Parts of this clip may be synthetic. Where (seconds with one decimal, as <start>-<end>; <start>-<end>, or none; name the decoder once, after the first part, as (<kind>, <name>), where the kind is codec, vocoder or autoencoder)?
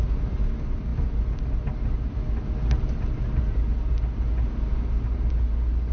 none